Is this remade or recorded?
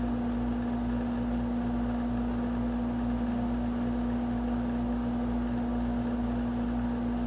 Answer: recorded